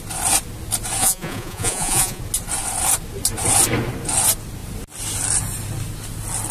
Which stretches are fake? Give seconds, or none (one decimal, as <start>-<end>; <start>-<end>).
1.0-2.2